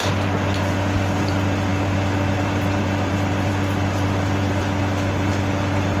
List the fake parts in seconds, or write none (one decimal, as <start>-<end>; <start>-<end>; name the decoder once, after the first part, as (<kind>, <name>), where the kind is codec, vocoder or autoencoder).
none